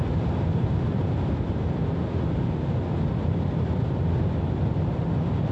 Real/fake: real